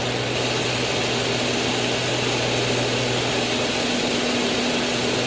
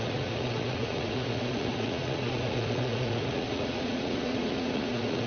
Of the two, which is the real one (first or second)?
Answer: first